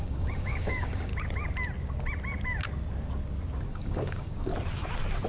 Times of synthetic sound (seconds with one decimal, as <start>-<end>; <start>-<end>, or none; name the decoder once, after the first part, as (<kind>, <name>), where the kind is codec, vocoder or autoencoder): 0.0-1.1 (codec, DAC); 3.7-4.5